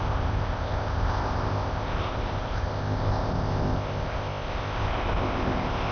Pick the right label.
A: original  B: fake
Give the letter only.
B